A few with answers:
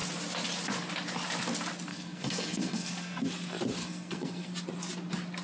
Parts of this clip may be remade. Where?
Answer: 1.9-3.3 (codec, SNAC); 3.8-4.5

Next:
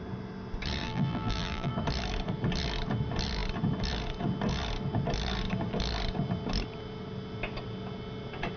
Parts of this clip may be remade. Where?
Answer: 0.8-1.7 (vocoder, BigVGAN v2)